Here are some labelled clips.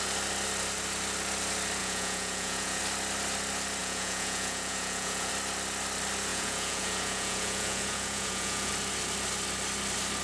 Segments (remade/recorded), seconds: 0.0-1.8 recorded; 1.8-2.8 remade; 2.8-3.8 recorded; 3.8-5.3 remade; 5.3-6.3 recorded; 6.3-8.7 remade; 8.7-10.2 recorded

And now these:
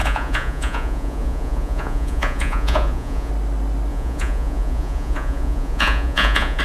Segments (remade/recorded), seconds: 0.0-3.3 remade; 3.3-3.9 recorded; 3.9-6.6 remade

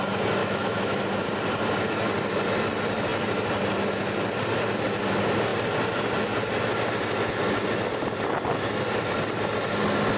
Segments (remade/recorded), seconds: 0.0-0.4 recorded; 0.4-1.0 remade; 1.0-10.2 recorded

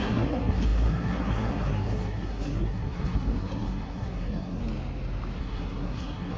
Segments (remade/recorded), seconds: 0.0-4.6 remade; 4.6-5.4 recorded; 5.4-6.4 remade

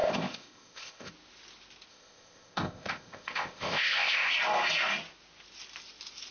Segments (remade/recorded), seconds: 0.0-1.1 remade; 1.1-1.9 recorded; 1.9-4.3 remade; 4.3-6.3 recorded

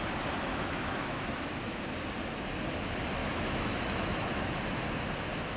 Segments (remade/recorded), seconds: 0.0-0.5 recorded; 0.5-1.8 remade; 1.8-3.2 recorded; 3.2-4.5 remade; 4.5-5.6 recorded

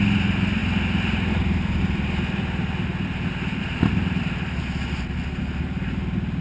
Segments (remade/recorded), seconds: 0.0-6.4 recorded